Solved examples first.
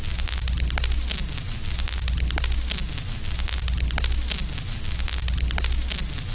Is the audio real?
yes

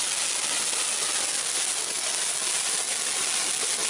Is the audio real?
yes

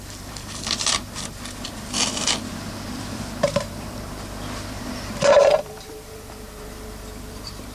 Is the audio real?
no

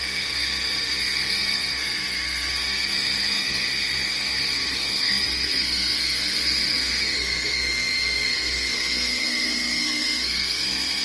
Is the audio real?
no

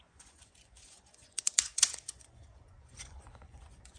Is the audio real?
no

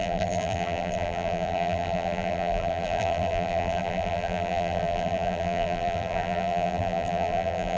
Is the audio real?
no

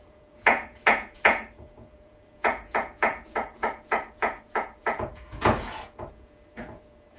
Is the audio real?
no